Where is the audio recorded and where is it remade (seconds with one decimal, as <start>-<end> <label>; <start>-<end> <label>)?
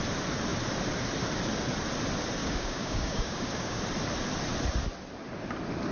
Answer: 0.0-2.4 recorded; 2.4-3.8 remade; 3.8-5.9 recorded